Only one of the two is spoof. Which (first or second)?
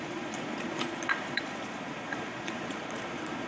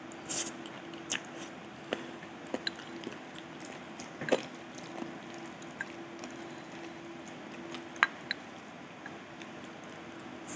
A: first